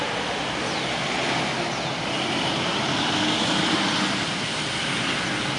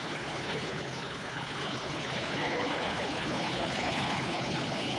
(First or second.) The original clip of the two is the first